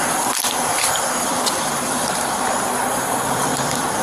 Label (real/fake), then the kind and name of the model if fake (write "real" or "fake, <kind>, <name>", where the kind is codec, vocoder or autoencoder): fake, vocoder, BigVGAN v2